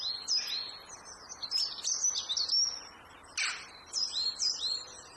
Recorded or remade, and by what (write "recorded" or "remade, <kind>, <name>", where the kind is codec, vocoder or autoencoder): recorded